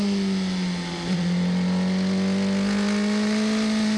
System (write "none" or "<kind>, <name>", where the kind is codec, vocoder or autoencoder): none